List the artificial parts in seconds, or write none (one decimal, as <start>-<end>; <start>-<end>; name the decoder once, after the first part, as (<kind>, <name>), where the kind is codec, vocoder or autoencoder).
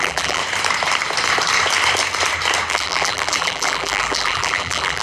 0.0-0.4 (vocoder, BigVGAN v2); 2.7-5.0